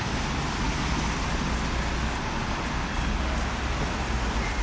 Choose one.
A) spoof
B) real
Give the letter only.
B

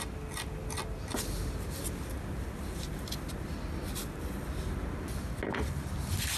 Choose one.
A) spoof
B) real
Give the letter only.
B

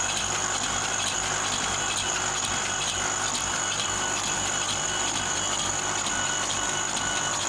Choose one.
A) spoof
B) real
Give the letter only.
B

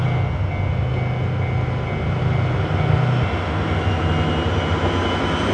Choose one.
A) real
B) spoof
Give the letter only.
A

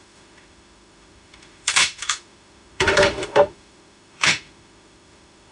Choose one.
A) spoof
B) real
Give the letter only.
A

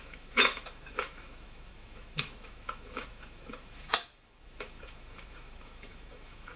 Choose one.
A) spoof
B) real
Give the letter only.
A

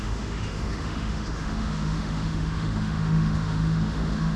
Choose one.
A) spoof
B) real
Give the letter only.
A